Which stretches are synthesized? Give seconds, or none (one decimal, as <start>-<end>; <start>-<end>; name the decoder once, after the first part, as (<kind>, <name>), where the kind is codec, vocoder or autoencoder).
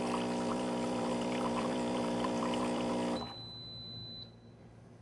0.5-2.9 (vocoder, BigVGAN v2)